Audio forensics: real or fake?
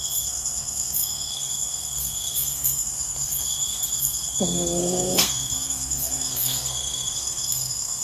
fake